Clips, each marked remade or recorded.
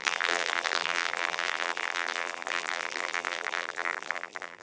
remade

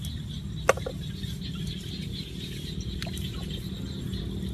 recorded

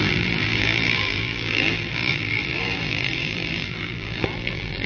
remade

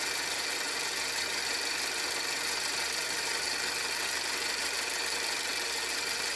recorded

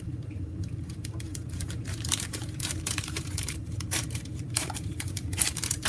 remade